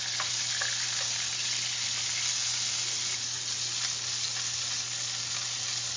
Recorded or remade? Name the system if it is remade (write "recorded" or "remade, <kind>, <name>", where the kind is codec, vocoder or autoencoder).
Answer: recorded